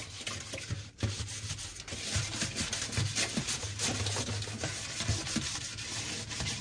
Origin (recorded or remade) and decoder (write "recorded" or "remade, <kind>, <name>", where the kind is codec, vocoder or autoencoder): recorded